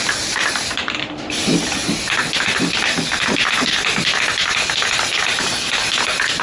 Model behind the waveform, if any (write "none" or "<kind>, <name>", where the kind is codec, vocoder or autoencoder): vocoder, BigVGAN v2